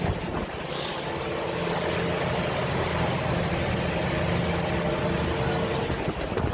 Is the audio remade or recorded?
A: recorded